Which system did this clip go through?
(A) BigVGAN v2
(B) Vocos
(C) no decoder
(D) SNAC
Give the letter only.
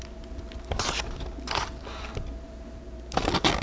C